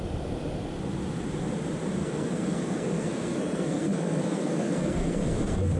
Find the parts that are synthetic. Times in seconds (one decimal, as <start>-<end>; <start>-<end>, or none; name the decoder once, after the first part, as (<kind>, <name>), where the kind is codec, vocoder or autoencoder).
2.0-5.8 (codec, SNAC)